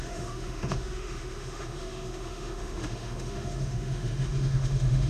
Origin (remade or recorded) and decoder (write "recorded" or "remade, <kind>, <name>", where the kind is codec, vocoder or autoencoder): remade, autoencoder, DAC-VAE